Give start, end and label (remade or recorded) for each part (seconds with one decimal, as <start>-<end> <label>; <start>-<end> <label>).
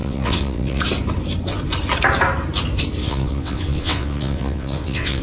0.0-0.8 remade; 0.8-3.0 recorded; 3.0-5.2 remade